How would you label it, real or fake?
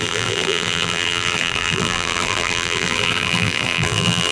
fake